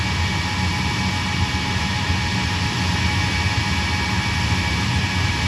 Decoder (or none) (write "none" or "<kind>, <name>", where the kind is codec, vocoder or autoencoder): none